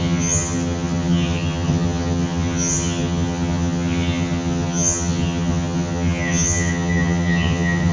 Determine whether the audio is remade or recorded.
remade